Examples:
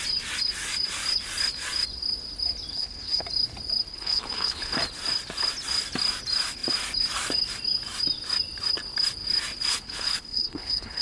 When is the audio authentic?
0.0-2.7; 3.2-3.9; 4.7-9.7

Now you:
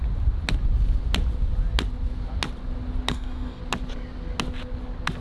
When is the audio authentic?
0.0-3.1; 3.6-5.2

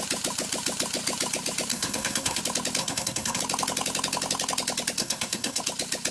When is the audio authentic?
0.0-1.7; 2.4-2.8; 3.4-5.0; 5.6-6.1

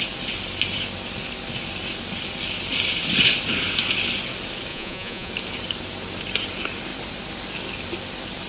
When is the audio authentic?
0.0-4.7; 5.3-8.5

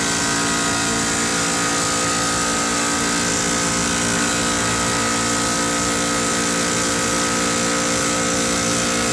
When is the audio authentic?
0.0-9.1